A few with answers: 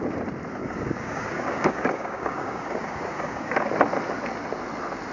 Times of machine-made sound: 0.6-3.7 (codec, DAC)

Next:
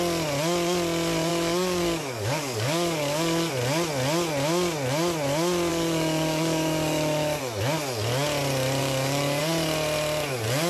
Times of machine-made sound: 1.3-3.5 (codec, DAC); 5.7-7.4; 8.8-9.4

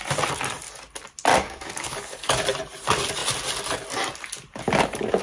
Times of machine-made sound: 1.3-2.4 (codec, DAC)

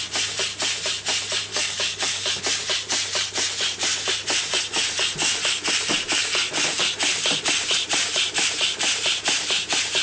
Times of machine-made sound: 1.5-2.4 (codec, DAC)

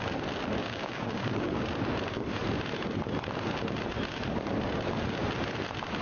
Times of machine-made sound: 0.6-1.5 (codec, DAC)